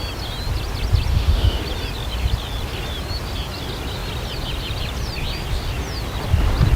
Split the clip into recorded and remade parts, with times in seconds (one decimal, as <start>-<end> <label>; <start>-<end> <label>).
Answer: 0.0-1.1 recorded; 1.1-1.6 remade; 1.6-6.8 recorded